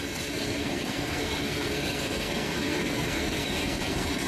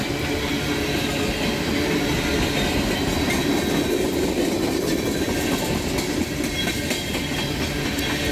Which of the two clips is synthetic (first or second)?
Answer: first